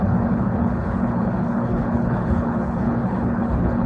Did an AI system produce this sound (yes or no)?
yes